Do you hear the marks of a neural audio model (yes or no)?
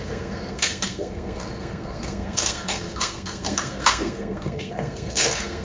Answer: yes